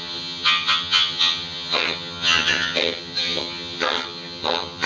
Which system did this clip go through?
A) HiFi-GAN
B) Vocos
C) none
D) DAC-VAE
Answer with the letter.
A